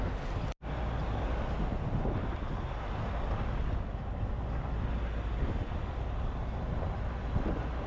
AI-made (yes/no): no